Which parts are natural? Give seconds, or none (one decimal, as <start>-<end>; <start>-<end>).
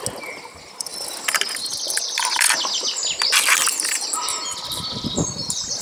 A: 0.0-5.8